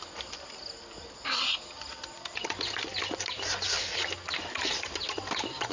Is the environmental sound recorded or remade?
recorded